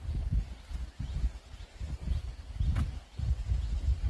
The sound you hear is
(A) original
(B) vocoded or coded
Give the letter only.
A